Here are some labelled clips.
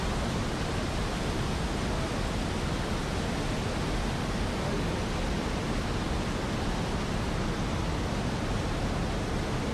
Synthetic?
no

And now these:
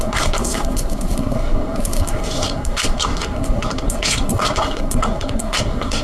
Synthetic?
yes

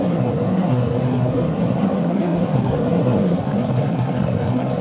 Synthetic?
yes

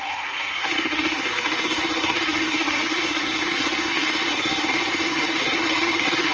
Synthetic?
yes